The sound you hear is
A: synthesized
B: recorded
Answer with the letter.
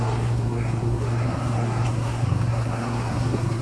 A